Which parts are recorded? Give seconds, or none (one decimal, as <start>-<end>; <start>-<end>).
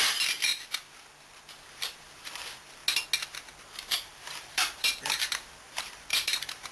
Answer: 0.5-1.5; 2.8-3.6